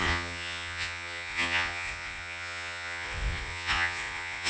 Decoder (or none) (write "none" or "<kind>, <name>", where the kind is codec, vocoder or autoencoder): vocoder, Vocos